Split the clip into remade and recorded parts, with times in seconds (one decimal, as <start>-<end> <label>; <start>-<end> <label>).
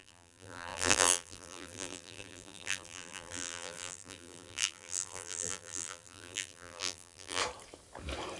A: 0.0-7.4 remade; 7.4-8.4 recorded